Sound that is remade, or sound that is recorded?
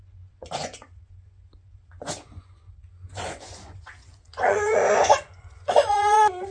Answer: remade